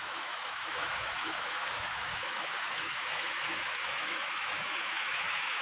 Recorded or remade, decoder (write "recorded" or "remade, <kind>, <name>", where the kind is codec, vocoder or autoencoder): remade, autoencoder, DAC-VAE